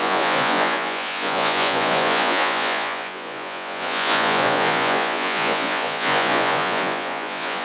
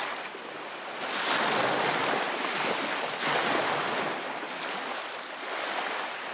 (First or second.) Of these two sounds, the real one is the second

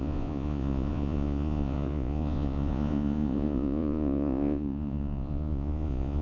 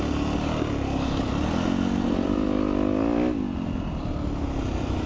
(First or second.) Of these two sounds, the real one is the second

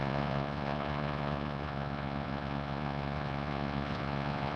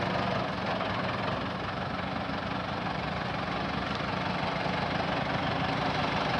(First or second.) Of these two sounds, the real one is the second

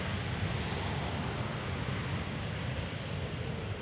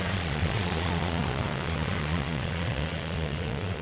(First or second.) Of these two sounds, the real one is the first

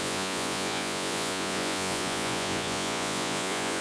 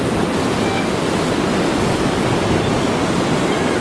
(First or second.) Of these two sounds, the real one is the second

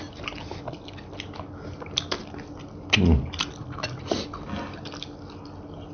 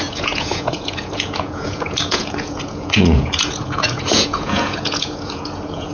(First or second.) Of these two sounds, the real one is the first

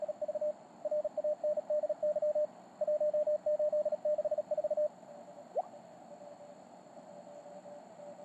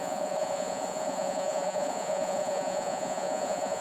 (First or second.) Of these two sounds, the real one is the first